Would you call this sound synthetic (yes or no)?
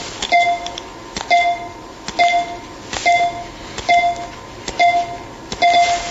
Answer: no